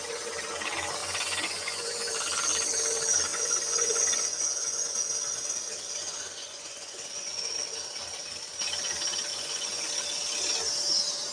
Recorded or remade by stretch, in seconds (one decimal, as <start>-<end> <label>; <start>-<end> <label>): 0.0-1.0 recorded; 1.0-2.1 remade; 2.1-3.3 recorded; 3.3-5.1 remade; 5.1-6.0 recorded; 6.0-7.5 remade; 7.5-9.3 recorded; 9.3-9.9 remade; 9.9-11.3 recorded